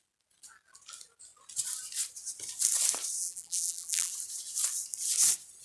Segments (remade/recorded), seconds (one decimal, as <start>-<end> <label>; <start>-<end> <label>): 0.0-3.2 recorded; 3.2-4.1 remade; 4.1-5.6 recorded